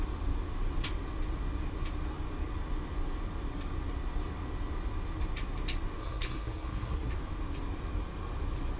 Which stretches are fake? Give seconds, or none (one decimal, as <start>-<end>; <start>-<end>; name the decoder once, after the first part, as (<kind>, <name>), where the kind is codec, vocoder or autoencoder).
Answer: 6.0-7.1 (codec, SNAC)